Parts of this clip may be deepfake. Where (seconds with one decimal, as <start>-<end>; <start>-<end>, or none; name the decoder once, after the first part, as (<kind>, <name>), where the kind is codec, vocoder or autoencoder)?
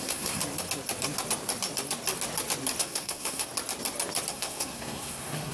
0.0-0.4 (codec, SNAC); 2.8-3.5; 4.3-5.5